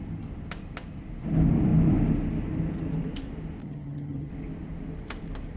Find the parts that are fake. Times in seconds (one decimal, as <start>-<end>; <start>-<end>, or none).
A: 3.6-4.3